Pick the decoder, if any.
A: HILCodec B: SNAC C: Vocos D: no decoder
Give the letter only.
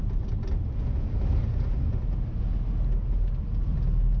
D